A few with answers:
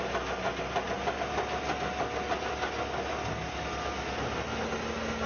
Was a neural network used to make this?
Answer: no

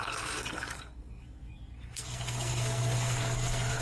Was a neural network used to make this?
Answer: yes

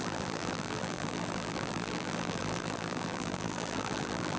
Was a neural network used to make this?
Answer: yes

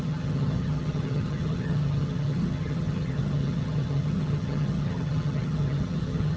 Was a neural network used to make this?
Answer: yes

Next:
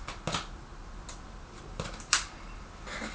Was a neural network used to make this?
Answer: no